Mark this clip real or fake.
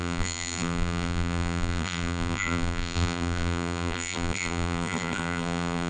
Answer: fake